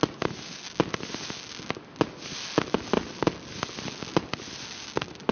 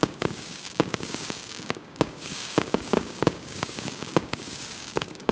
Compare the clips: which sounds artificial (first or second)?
second